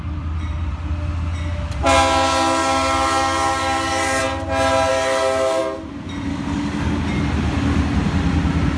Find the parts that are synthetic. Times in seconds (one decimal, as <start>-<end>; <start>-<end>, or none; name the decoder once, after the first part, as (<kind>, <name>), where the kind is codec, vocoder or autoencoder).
2.6-4.2 (codec, DAC); 4.9-5.6; 6.3-7.0